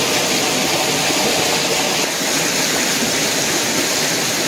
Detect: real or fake real